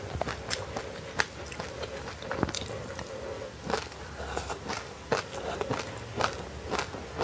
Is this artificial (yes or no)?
no